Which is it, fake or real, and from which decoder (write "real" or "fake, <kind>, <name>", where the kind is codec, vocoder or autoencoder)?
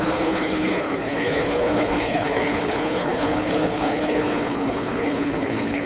fake, codec, HILCodec